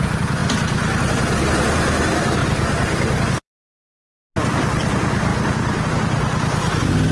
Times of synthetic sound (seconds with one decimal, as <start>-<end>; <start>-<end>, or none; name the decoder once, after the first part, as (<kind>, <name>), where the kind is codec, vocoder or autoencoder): 2.4-3.5 (vocoder, BigVGAN v2); 5.3-5.9

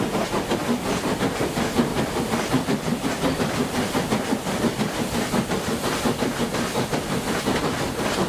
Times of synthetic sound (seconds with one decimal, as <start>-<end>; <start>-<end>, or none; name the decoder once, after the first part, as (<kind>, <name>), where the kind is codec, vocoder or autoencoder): 1.9-4.6 (vocoder, BigVGAN v2)